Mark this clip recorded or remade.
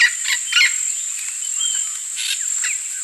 recorded